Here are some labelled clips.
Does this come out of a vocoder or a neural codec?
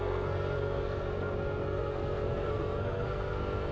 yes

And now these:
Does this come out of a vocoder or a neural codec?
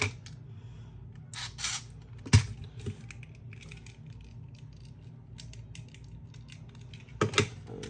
no